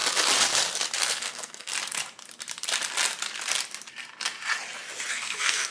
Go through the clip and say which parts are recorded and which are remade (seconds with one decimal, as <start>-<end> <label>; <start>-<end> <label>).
0.0-1.0 recorded; 1.0-1.7 remade; 1.7-5.1 recorded; 5.1-5.7 remade